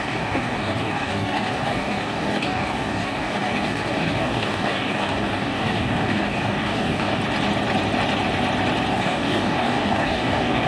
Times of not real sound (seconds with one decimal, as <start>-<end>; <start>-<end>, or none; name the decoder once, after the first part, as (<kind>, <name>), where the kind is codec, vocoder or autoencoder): 0.0-7.2 (codec, DAC); 8.9-10.7